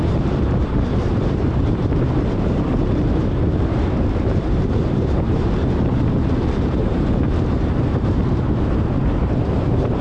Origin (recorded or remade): remade